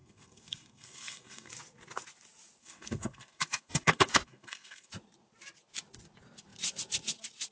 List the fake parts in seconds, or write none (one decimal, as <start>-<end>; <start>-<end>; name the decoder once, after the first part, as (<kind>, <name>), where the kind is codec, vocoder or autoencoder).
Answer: 0.0-1.5 (codec, SNAC); 2.6-4.9